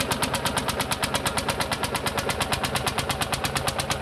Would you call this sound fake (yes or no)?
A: no